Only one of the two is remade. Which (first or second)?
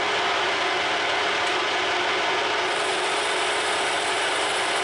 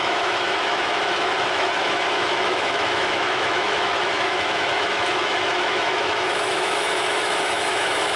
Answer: second